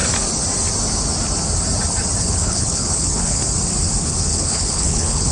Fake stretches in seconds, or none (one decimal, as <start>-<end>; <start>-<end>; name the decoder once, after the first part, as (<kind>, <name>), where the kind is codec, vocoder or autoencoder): 2.2-3.4 (codec, HILCodec); 4.0-5.3